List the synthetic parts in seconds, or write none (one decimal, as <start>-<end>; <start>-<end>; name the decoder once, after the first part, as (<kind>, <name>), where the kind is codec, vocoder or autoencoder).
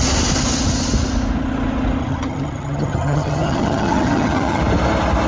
2.0-4.6 (vocoder, HiFi-GAN)